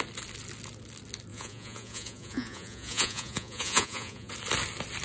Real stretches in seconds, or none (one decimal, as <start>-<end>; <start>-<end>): 0.0-1.3; 4.3-5.0